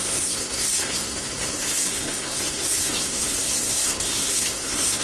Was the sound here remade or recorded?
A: remade